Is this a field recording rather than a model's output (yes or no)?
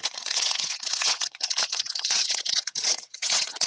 no